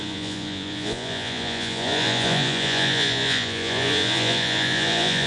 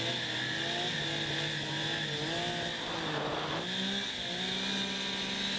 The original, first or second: second